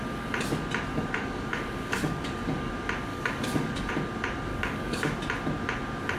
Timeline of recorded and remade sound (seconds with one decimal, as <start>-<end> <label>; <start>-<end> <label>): 0.0-0.9 recorded; 0.9-2.7 remade; 2.7-3.1 recorded; 3.1-3.9 remade; 3.9-4.5 recorded; 4.5-5.2 remade; 5.2-6.2 recorded